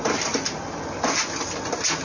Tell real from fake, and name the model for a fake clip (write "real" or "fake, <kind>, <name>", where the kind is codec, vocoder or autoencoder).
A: real